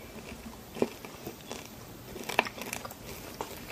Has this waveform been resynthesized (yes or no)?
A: no